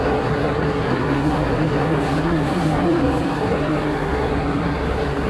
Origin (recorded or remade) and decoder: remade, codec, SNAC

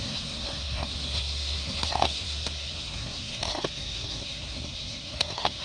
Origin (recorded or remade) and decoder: remade, codec, SNAC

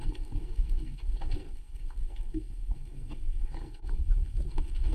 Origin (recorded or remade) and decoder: remade, codec, SNAC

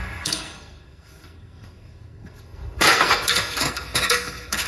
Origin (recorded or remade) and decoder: remade, codec, SNAC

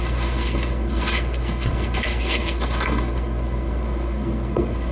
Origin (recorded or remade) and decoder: remade, codec, SNAC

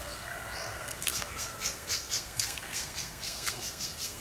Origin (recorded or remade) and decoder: remade, codec, SNAC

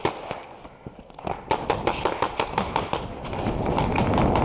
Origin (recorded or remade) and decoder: recorded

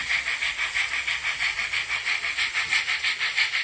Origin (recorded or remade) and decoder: recorded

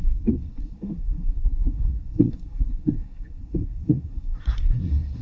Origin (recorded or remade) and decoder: remade, codec, SNAC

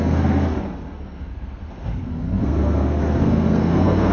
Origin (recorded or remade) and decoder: remade, codec, SNAC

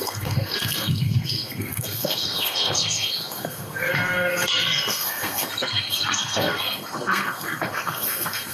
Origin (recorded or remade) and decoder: remade, codec, SNAC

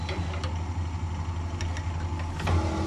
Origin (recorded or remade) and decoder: recorded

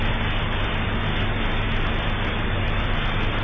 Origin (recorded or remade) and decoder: recorded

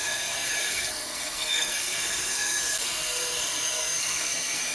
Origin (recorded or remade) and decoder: remade, codec, SNAC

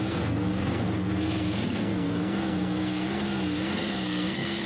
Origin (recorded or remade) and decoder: remade, codec, SNAC